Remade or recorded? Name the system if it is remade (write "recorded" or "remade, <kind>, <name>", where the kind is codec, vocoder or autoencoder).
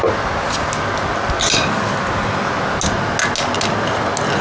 recorded